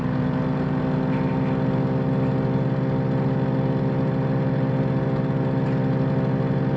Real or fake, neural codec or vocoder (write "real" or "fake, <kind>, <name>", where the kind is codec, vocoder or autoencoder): real